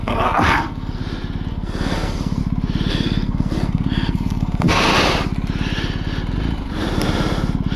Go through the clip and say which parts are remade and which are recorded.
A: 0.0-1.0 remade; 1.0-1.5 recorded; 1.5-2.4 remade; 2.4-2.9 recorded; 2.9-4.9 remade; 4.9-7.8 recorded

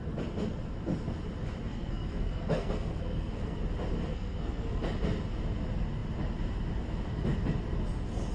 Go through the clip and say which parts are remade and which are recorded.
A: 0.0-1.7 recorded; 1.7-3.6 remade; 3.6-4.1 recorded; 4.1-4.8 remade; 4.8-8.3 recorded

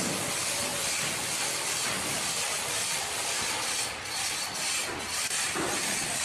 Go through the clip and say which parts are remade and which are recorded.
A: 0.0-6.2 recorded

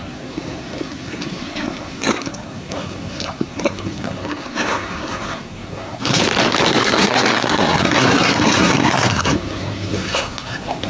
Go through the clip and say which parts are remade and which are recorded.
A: 0.0-6.2 remade; 6.2-6.7 recorded; 6.7-10.9 remade